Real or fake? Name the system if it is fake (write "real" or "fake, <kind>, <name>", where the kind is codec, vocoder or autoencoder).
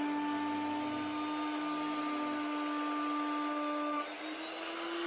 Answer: real